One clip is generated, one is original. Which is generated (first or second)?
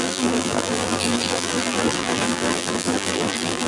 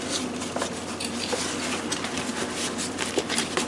first